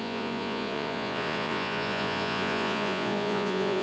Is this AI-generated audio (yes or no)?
yes